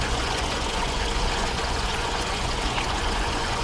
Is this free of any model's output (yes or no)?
no